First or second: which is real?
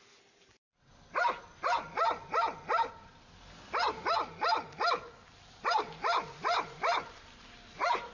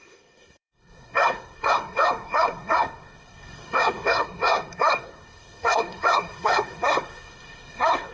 first